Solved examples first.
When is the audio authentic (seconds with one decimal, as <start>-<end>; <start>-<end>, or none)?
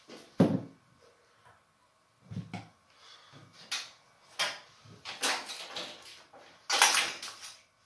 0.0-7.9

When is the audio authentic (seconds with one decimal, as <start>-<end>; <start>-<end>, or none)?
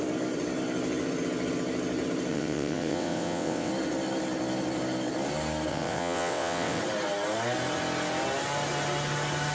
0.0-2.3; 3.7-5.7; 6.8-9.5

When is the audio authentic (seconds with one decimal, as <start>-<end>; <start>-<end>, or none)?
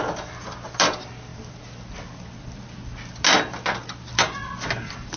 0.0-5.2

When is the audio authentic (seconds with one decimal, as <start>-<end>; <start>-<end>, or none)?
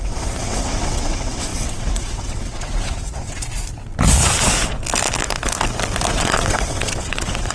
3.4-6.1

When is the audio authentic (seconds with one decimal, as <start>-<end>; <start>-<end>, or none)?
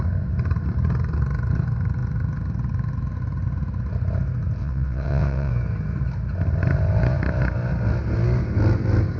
0.0-4.6; 5.5-9.2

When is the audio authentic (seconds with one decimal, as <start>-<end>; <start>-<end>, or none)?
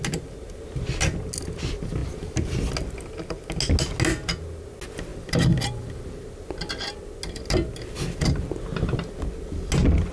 0.0-10.1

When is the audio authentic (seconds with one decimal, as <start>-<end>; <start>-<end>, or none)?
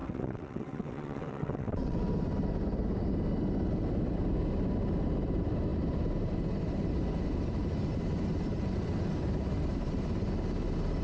2.0-11.0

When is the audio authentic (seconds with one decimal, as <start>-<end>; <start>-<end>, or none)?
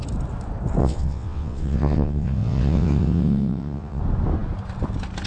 0.0-0.8; 4.0-5.3